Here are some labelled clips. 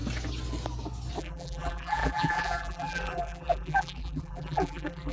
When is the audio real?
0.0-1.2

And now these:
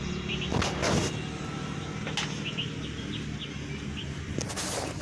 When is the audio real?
0.0-5.0